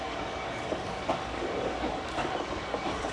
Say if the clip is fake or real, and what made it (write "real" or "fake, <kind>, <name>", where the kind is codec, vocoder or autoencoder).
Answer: fake, codec, DAC